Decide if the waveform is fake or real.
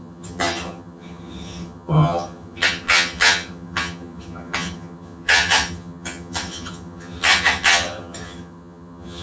fake